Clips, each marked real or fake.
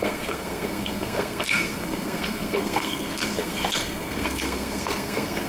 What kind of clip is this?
fake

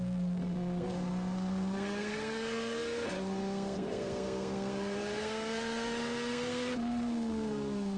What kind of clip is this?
fake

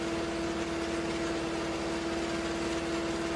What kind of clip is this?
real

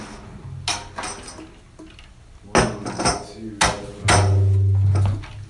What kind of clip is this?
real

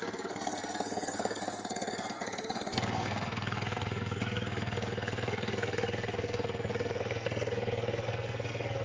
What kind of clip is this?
fake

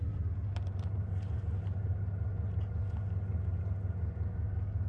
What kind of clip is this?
real